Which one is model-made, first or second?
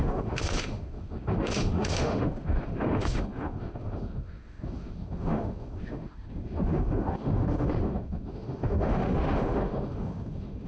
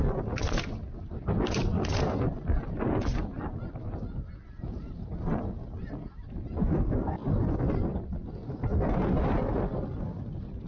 first